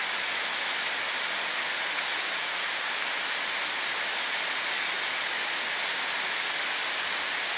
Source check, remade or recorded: recorded